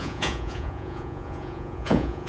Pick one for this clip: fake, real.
fake